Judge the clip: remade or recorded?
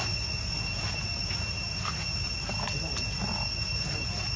recorded